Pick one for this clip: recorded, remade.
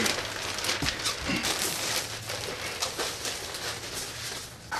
recorded